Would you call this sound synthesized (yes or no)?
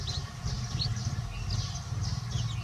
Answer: no